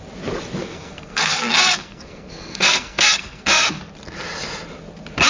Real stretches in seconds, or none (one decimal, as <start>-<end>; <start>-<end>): 0.0-0.6; 3.8-5.3